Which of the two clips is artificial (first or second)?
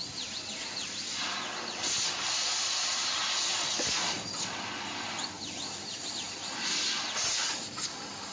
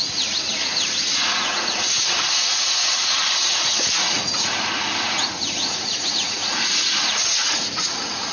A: second